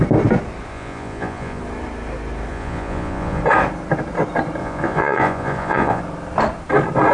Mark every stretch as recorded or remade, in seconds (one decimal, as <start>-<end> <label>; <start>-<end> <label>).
0.0-0.7 recorded; 0.7-1.6 remade; 1.6-2.5 recorded; 2.5-3.4 remade; 3.4-4.6 recorded; 4.6-6.0 remade; 6.0-7.1 recorded